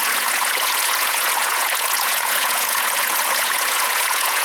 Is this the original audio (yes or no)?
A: no